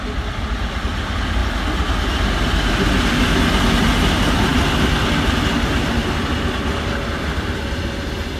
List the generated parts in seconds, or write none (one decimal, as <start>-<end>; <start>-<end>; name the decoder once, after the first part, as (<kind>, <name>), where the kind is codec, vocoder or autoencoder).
none